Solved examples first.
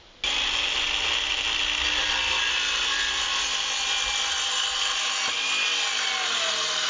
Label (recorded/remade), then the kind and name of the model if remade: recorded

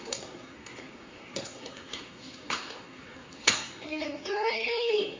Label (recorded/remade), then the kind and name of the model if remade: remade, codec, SNAC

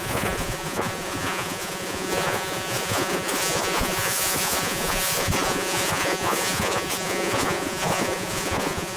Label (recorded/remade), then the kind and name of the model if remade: remade, vocoder, Vocos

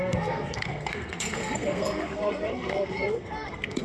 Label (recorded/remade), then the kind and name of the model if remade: remade, codec, SNAC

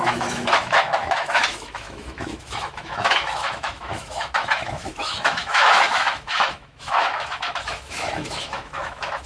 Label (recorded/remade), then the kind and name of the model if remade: remade, autoencoder, DAC-VAE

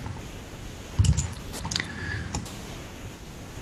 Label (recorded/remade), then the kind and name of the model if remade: recorded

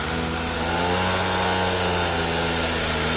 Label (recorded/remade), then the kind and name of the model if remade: recorded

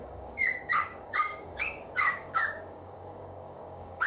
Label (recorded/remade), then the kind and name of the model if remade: remade, codec, DAC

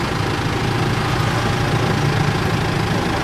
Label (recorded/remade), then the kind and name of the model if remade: recorded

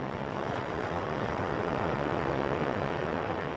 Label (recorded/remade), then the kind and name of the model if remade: remade, vocoder, WaveNeXt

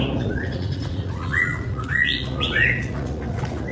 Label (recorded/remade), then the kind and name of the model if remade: remade, vocoder, Vocos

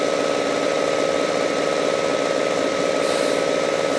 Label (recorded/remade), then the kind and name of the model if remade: recorded